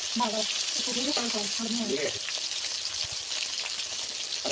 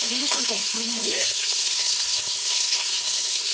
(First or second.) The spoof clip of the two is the second